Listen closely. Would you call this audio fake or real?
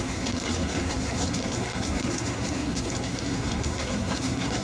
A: fake